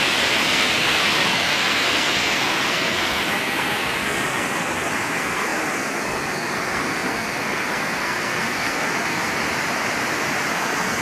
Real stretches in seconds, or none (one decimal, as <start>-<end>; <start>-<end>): 9.4-10.5